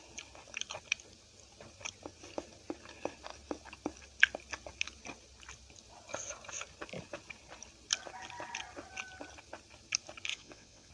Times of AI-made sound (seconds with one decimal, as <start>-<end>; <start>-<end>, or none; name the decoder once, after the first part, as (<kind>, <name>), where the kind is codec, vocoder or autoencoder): 10.3-10.9 (vocoder, WaveNeXt)